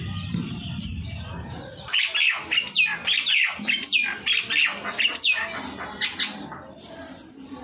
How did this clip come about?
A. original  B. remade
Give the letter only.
A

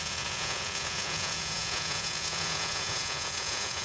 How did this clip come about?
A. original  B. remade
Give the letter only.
B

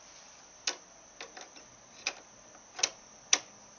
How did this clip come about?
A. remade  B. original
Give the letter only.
B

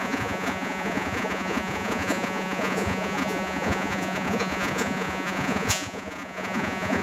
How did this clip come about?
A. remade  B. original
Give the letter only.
A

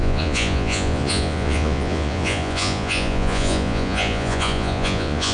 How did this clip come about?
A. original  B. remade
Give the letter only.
B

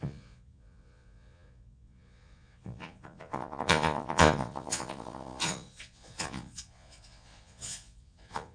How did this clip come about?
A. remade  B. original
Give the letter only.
A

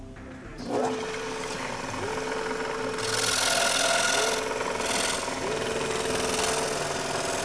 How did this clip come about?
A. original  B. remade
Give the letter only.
A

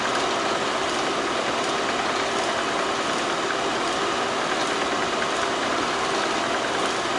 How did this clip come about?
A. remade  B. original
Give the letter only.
B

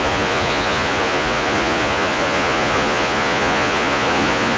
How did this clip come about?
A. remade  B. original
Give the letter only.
A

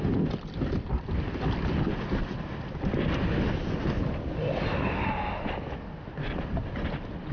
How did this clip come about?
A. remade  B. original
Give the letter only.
B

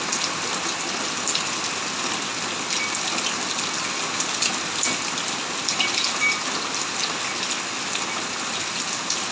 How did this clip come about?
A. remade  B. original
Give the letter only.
B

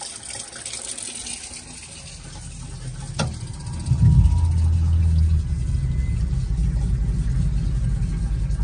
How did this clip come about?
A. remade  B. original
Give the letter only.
B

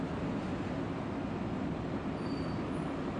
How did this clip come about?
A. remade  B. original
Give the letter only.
B